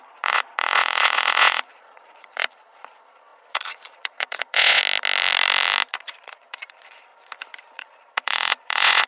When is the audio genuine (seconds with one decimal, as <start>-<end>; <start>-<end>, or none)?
4.8-5.9; 7.1-7.6